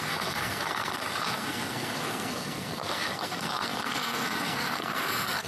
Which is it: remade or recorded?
remade